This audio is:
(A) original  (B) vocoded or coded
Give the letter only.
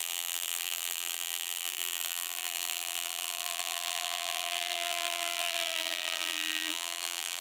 B